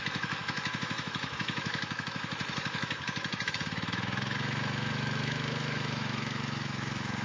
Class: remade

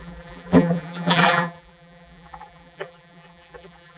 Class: remade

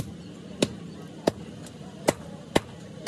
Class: recorded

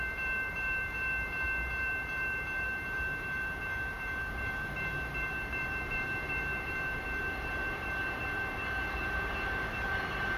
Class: remade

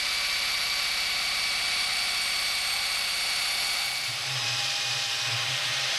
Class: remade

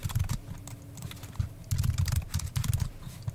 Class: recorded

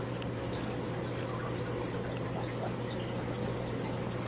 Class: recorded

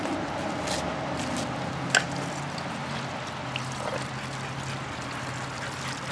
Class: recorded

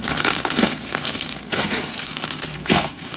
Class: remade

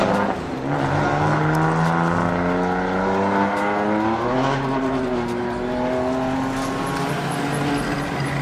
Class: recorded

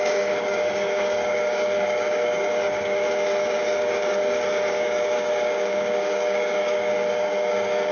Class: remade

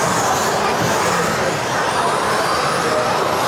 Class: recorded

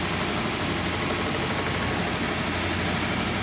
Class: recorded